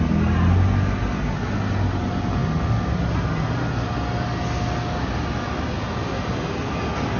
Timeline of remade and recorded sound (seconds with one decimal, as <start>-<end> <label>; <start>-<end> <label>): 0.0-7.2 recorded